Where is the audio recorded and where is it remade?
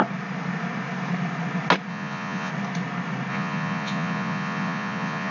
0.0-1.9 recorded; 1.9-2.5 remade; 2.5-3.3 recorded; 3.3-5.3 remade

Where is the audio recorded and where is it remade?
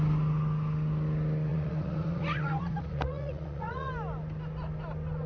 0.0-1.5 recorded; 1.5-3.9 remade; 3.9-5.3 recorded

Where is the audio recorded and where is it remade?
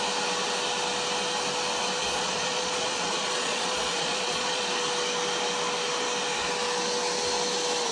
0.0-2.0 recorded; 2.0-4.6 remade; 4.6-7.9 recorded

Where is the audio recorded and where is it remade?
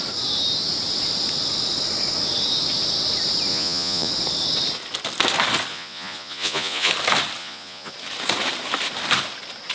0.0-3.5 recorded; 3.5-4.1 remade; 4.1-5.7 recorded; 5.7-6.9 remade; 6.9-7.4 recorded; 7.4-7.9 remade; 7.9-9.7 recorded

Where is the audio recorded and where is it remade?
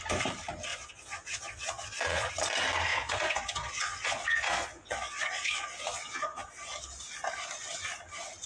0.0-0.7 recorded; 0.7-2.3 remade; 2.3-2.9 recorded; 2.9-6.6 remade; 6.6-8.5 recorded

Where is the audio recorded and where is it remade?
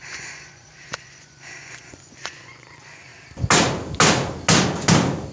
0.0-3.1 remade; 3.1-5.3 recorded